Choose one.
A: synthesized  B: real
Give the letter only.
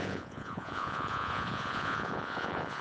A